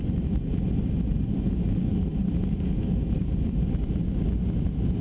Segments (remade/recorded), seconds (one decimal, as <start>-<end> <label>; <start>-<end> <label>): 0.0-5.0 recorded